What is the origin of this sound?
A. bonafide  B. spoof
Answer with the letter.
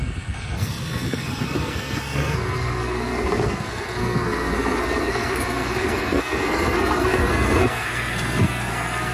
B